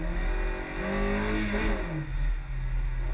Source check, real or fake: real